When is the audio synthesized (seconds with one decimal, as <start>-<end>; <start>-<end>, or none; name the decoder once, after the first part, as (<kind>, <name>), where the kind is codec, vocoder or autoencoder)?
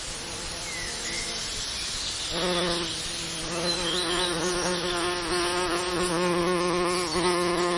none